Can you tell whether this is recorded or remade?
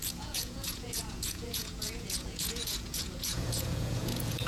remade